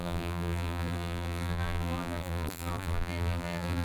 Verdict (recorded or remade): remade